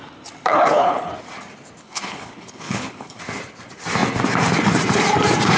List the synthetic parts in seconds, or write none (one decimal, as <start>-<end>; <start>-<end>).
0.5-1.1; 1.8-3.2